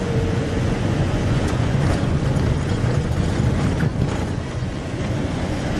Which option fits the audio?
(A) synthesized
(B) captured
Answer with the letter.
A